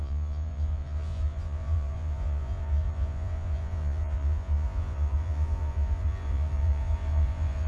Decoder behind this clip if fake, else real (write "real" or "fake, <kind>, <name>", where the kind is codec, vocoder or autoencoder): fake, vocoder, Vocos